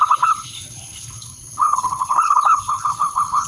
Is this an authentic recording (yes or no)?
no